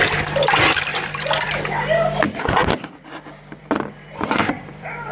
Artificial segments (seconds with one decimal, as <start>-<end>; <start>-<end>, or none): 0.9-1.6; 3.6-5.1